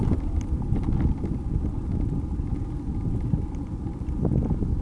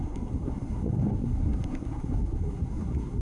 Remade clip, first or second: second